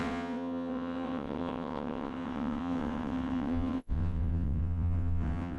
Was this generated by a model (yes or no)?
yes